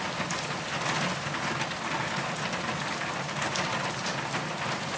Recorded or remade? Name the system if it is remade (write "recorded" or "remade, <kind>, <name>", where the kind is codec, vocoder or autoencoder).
recorded